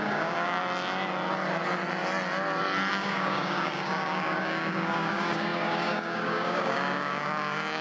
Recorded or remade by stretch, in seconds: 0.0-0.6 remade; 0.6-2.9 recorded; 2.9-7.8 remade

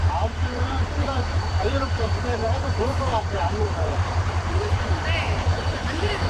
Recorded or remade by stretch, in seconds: 0.0-6.3 remade